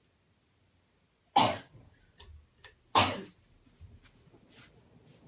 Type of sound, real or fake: real